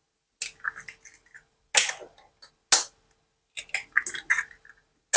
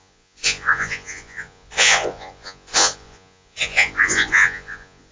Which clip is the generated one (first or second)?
second